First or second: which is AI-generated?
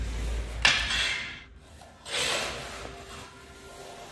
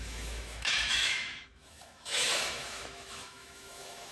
second